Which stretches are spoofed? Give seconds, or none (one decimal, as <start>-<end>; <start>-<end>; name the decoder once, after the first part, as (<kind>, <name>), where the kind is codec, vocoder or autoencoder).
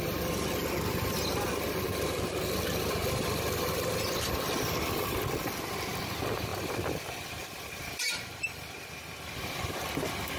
3.0-4.7 (vocoder, BigVGAN v2); 6.5-9.7